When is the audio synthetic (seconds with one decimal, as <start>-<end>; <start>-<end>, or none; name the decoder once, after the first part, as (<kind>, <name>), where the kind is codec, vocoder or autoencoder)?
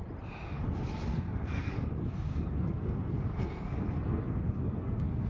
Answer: 1.1-1.9 (codec, SNAC); 2.3-5.3